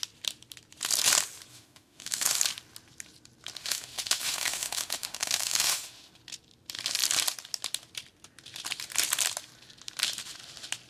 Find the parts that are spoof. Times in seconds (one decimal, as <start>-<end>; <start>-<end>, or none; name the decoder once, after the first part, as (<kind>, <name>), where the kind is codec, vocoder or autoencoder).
1.5-2.4 (autoencoder, DAC-VAE); 3.6-6.1